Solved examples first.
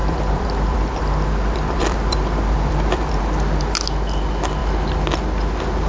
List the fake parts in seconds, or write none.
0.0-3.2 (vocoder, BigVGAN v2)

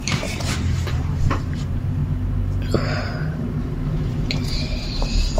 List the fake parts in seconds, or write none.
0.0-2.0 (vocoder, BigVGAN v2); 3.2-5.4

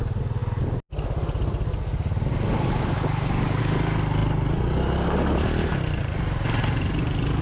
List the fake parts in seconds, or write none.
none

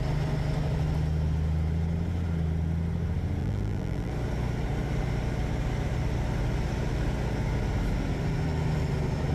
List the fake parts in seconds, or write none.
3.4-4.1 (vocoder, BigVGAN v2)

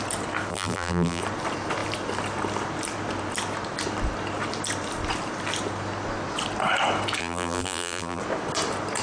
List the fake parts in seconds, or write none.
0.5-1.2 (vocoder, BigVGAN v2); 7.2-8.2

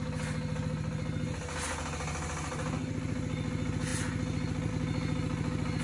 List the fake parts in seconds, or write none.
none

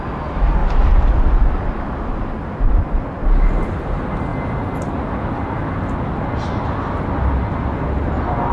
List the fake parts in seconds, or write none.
0.6-3.7 (vocoder, BigVGAN v2)

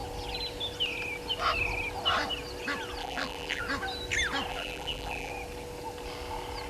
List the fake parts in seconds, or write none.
3.0-3.6 (vocoder, BigVGAN v2); 4.5-5.3